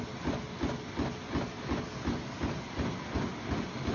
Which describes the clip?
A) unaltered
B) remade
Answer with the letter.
A